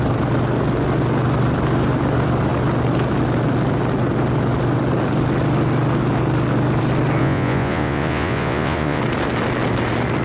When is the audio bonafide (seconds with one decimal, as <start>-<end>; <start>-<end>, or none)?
0.0-7.2; 9.0-10.2